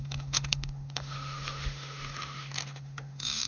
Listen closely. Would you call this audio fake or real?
fake